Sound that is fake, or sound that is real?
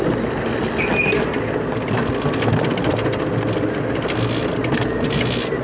real